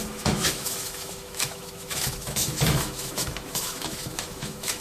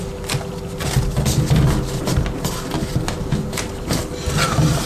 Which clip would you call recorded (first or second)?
second